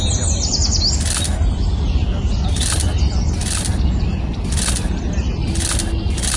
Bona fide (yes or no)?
yes